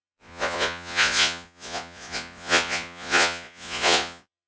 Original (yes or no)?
no